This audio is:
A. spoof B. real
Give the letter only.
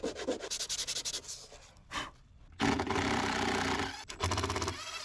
B